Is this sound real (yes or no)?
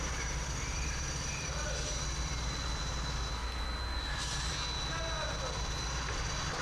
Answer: yes